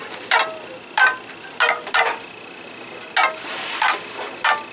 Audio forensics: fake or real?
real